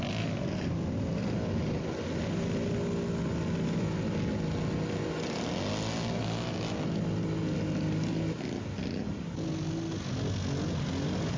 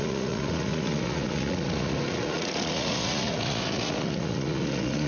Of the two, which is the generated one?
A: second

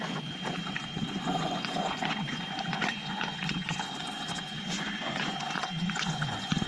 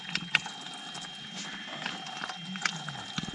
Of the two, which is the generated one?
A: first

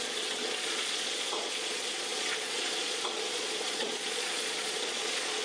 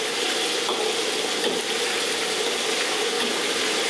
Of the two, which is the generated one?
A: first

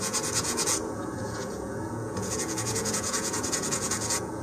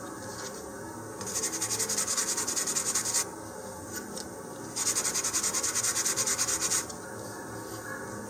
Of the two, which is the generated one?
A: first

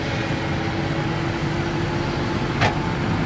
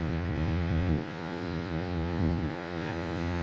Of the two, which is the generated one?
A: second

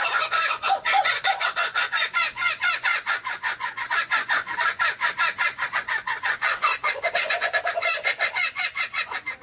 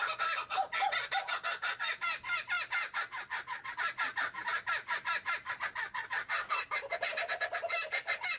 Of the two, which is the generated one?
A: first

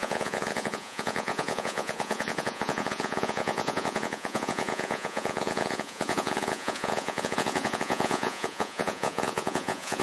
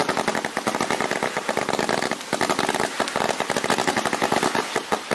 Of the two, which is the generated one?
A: first